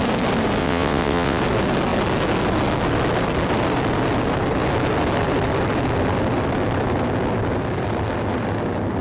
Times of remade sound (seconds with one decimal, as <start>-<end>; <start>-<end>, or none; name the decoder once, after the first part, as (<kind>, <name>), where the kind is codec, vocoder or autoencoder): 0.6-1.4 (vocoder, WaveNeXt)